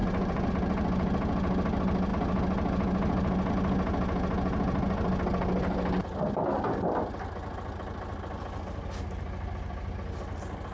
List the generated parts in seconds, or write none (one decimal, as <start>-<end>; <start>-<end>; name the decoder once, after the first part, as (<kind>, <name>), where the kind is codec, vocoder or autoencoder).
0.0-0.5 (vocoder, Vocos)

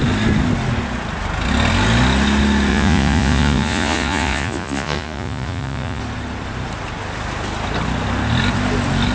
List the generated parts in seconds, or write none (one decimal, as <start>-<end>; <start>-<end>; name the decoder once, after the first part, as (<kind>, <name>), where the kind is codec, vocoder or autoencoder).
2.7-6.0 (vocoder, Vocos)

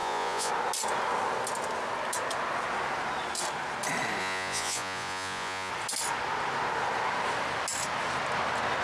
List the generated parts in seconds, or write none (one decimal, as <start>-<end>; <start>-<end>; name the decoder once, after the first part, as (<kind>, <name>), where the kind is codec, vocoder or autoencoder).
0.0-0.5 (vocoder, Vocos); 4.2-5.7

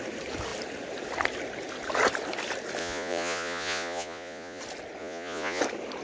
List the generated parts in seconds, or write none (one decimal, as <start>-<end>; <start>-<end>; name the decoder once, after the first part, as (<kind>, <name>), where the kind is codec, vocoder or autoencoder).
2.8-4.6 (vocoder, Vocos); 5.0-5.6